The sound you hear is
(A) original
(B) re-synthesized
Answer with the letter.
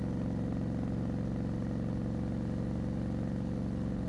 A